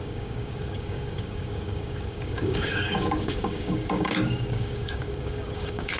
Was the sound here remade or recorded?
remade